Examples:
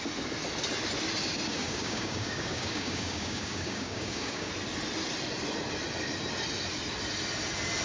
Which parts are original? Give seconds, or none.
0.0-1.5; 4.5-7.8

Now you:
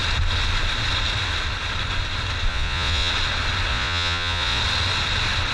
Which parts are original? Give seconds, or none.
0.0-2.5; 3.1-3.7; 4.6-5.5

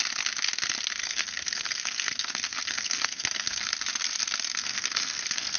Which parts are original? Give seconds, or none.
0.0-1.0; 3.7-4.6

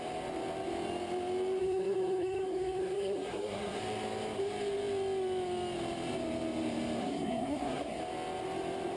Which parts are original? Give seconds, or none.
0.0-1.6; 3.8-7.0; 8.0-9.0

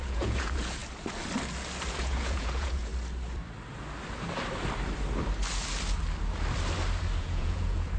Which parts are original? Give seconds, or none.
0.8-1.9; 2.9-7.2

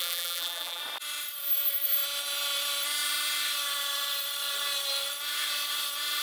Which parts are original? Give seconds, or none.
0.8-6.2

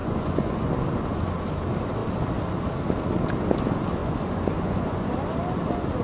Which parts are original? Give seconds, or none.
0.7-4.0; 5.1-6.0